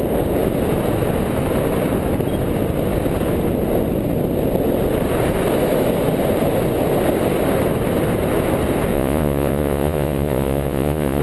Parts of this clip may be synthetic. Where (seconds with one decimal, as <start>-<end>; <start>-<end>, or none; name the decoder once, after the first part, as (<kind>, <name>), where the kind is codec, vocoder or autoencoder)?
8.9-11.2 (vocoder, Vocos)